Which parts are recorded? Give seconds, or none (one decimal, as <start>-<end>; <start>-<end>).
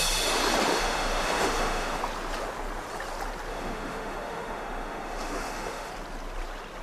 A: 0.0-0.7; 2.0-3.5; 5.9-6.8